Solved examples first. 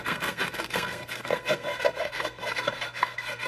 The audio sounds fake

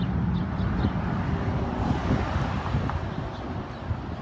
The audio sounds real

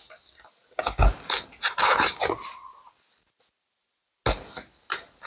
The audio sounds real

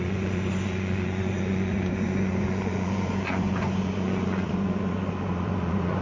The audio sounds fake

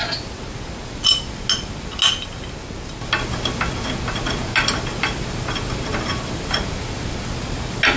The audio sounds real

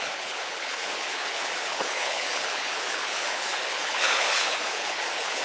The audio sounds fake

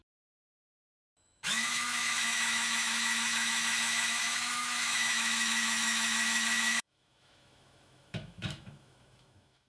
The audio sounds fake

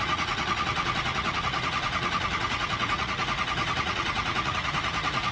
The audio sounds fake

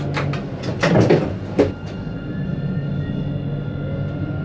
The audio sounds real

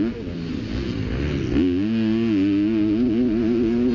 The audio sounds real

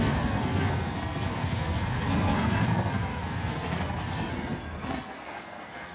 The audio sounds fake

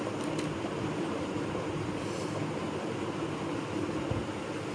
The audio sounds real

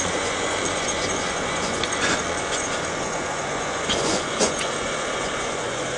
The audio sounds fake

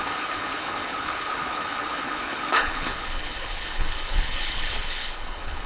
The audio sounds fake